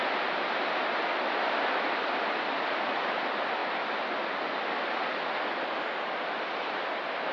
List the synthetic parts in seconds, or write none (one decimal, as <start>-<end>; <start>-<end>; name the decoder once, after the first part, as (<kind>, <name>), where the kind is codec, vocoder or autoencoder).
1.0-7.3 (vocoder, BigVGAN v2)